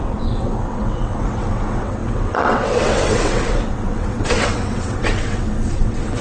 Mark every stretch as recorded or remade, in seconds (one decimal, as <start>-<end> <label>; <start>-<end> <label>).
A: 0.0-6.2 remade